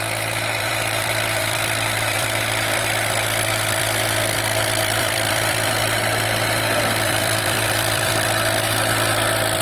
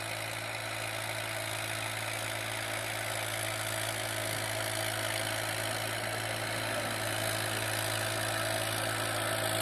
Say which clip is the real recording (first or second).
second